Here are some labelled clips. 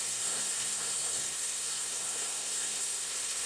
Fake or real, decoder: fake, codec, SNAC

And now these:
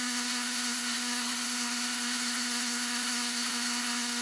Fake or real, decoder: fake, codec, SNAC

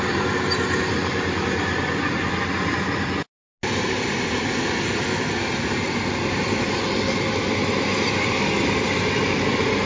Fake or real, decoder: real